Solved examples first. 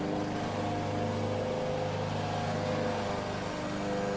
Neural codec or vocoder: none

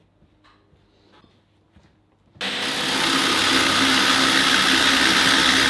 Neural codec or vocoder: none